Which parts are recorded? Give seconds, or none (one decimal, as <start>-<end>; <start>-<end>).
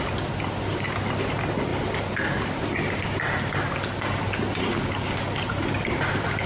0.0-4.7; 5.2-6.5